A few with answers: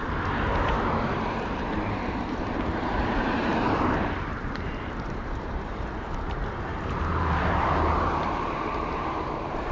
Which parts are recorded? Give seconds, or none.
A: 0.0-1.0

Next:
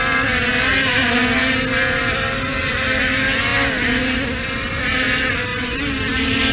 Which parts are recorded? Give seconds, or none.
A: 0.0-5.5

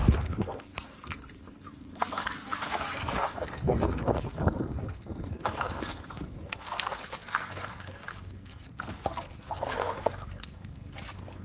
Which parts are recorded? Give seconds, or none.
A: none

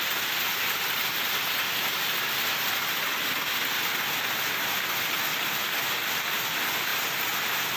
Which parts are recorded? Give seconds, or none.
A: 0.0-7.8

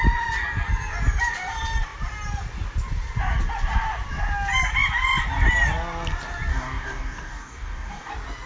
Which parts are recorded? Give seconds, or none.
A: 0.0-6.5; 8.1-8.5

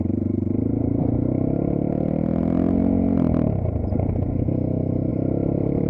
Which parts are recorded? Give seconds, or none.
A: 0.0-5.1

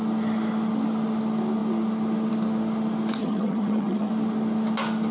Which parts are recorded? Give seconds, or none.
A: 0.0-3.2; 4.1-5.1